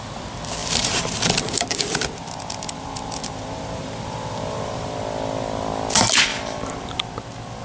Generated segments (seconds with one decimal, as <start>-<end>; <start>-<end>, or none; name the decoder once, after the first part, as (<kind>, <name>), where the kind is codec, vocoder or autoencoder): 0.6-5.0 (vocoder, BigVGAN v2); 6.3-7.0